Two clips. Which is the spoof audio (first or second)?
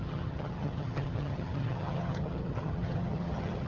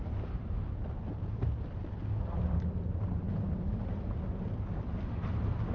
first